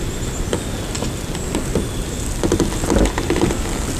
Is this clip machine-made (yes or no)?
no